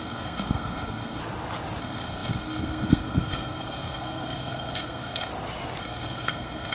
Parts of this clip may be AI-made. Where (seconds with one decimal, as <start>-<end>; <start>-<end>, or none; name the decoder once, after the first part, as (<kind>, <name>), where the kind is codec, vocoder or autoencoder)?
0.0-1.2 (codec, SNAC); 1.8-5.3; 5.8-6.7

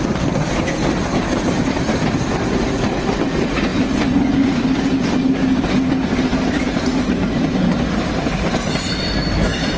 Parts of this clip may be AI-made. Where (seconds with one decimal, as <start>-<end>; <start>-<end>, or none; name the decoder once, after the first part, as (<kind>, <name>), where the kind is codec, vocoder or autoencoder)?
6.3-7.5 (vocoder, BigVGAN v2)

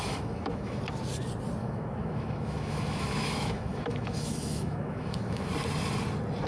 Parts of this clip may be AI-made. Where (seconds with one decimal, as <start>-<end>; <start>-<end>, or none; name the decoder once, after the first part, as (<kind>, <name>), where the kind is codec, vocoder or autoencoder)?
0.0-0.8 (autoencoder, DAC-VAE); 1.6-5.5

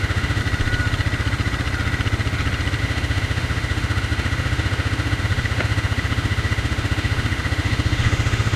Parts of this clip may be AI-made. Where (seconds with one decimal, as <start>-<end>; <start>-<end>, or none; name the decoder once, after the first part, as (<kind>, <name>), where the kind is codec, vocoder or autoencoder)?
0.0-0.4 (autoencoder, DAC-VAE); 2.8-8.6